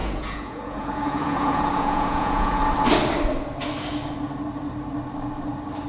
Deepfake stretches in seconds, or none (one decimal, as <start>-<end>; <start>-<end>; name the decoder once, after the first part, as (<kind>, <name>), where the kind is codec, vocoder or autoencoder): 0.0-2.6 (vocoder, Vocos)